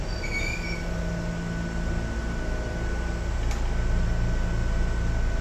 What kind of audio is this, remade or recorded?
recorded